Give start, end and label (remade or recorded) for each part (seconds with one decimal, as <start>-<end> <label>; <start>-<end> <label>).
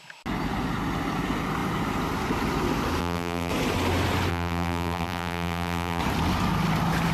0.0-3.0 recorded; 3.0-3.5 remade; 3.5-4.3 recorded; 4.3-6.0 remade; 6.0-7.1 recorded